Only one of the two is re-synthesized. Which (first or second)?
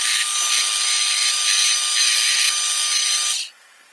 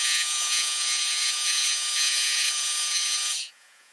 second